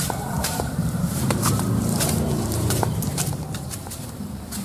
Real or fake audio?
fake